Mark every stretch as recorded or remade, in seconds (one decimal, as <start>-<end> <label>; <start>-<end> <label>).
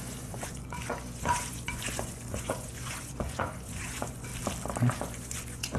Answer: 0.0-4.3 remade; 4.3-4.9 recorded; 4.9-5.8 remade